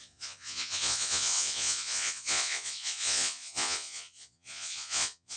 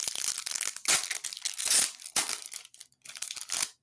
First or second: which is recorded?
second